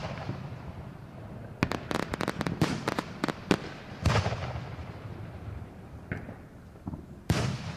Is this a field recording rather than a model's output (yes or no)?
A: yes